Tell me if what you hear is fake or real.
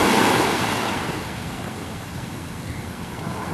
fake